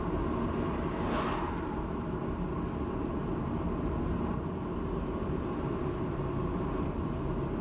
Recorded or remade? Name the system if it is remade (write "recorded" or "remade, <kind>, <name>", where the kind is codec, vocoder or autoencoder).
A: recorded